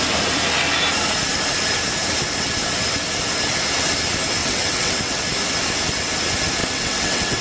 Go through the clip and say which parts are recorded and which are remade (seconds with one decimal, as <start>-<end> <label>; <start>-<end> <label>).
0.0-4.4 recorded; 4.4-5.2 remade; 5.2-6.6 recorded; 6.6-7.4 remade